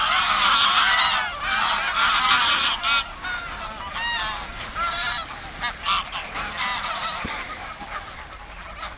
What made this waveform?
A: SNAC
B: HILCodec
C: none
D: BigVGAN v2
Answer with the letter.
C